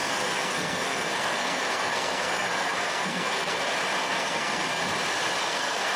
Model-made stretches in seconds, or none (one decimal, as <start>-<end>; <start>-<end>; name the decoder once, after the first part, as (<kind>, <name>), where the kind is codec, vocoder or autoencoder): 0.0-3.6 (codec, SNAC); 4.0-4.8; 5.4-6.0